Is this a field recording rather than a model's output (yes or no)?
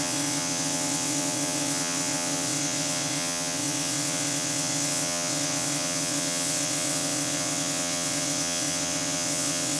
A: no